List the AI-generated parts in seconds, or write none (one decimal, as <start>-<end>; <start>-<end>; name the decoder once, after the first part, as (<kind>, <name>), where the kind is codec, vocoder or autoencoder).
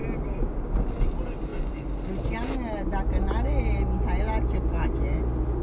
none